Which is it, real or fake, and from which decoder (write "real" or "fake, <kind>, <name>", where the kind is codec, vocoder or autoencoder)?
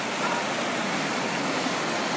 real